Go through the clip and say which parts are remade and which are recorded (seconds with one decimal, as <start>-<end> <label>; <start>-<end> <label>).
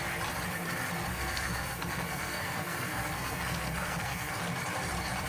0.0-1.1 recorded; 1.1-4.3 remade; 4.3-5.3 recorded